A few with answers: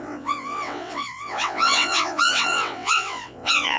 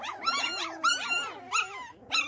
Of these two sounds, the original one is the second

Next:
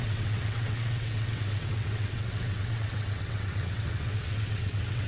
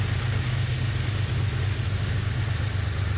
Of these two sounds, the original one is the second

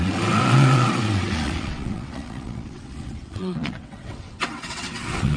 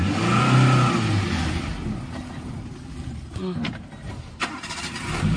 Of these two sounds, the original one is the second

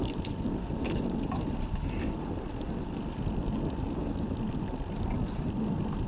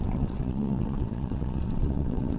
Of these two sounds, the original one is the first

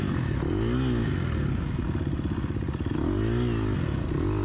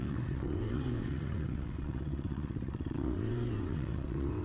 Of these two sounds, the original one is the first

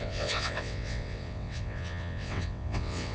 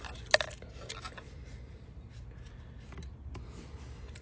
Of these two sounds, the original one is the second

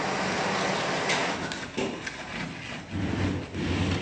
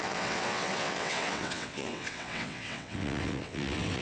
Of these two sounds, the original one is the first